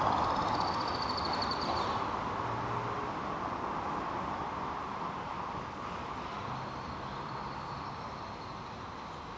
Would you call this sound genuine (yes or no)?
yes